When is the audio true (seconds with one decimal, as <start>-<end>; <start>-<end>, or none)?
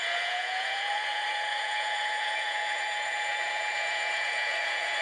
none